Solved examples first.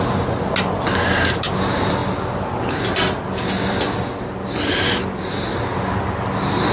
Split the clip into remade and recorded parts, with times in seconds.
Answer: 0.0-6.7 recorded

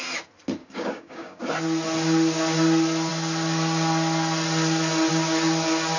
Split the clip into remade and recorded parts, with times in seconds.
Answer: 0.0-0.6 recorded; 0.6-1.4 remade; 1.4-6.0 recorded

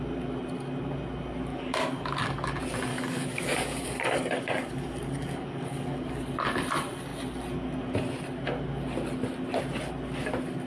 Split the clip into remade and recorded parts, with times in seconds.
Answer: 0.0-1.5 recorded; 1.5-2.5 remade; 2.5-2.9 recorded; 2.9-6.2 remade; 6.2-10.7 recorded

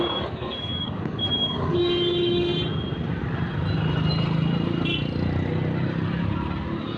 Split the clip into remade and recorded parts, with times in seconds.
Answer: 0.0-2.5 remade; 2.5-7.0 recorded

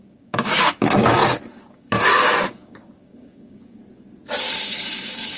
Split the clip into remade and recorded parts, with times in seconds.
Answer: 0.0-1.2 remade; 1.2-1.7 recorded; 1.7-3.8 remade; 3.8-4.4 recorded; 4.4-5.4 remade

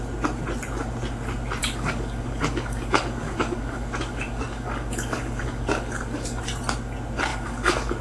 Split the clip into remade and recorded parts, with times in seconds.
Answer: 0.0-1.6 recorded; 1.6-6.4 remade; 6.4-7.3 recorded; 7.3-8.0 remade